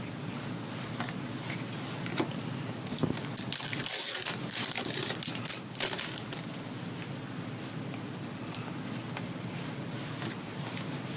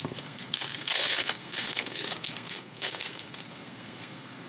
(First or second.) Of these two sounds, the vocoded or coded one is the second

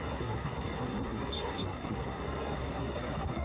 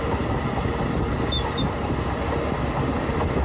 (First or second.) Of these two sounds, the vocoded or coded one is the first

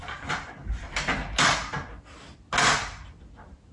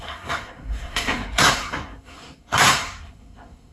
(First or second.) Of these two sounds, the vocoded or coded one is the second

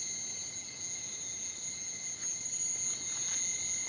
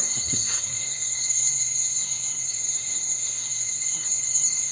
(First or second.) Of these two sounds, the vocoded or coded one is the second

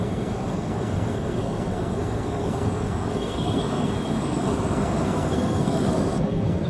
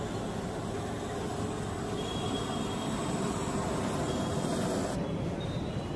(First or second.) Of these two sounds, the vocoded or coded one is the first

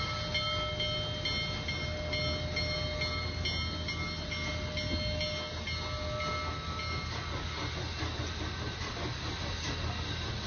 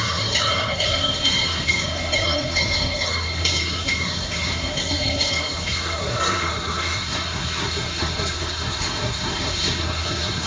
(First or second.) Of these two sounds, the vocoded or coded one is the second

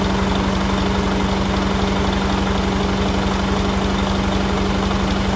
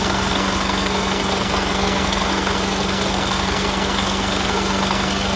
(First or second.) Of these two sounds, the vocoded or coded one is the second